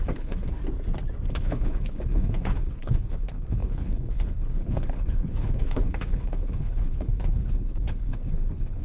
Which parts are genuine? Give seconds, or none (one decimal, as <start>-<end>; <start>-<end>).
0.6-1.3

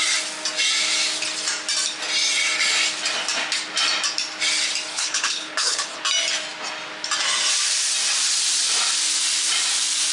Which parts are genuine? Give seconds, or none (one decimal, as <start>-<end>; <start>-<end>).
0.0-4.9; 6.0-10.1

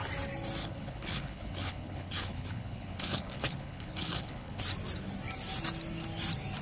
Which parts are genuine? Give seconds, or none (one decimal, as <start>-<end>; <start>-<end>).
0.0-0.6; 4.6-6.6

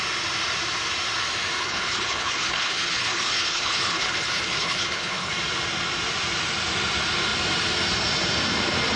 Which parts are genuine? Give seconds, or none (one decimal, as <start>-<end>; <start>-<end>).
0.0-1.6; 5.3-9.0

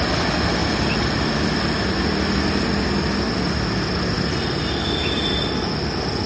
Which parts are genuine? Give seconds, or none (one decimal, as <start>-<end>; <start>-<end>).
0.0-6.3

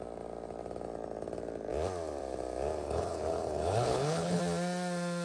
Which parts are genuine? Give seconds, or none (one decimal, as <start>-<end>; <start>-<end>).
0.0-2.8; 4.4-5.2

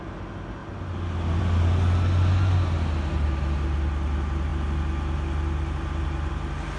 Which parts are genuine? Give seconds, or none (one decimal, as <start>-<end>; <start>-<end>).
0.0-6.8

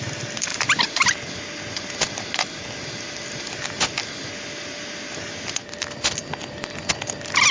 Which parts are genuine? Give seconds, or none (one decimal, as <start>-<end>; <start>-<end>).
0.0-7.5